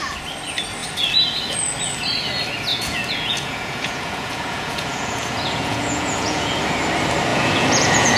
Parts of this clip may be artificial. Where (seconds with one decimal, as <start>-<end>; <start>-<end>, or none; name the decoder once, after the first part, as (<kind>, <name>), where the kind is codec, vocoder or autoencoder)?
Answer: 2.7-6.6 (vocoder, Vocos); 7.3-8.2